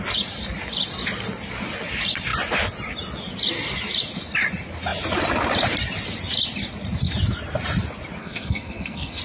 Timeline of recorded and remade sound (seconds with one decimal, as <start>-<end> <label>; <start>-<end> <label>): 0.0-8.2 recorded; 8.2-9.2 remade